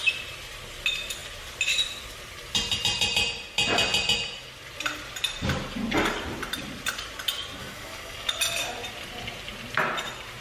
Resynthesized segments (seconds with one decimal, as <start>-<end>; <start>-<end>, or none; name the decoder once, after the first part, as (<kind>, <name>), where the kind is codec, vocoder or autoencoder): 7.6-8.3 (codec, DAC)